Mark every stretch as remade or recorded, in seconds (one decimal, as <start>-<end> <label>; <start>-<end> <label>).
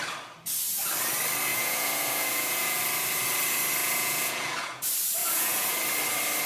0.0-1.5 recorded; 1.5-2.8 remade; 2.8-3.8 recorded; 3.8-4.8 remade; 4.8-5.2 recorded; 5.2-5.7 remade; 5.7-6.5 recorded